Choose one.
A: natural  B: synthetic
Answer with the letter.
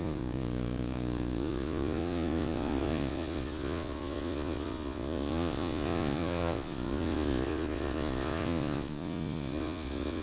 B